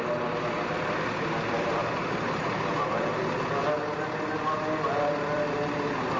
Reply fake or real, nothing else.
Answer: real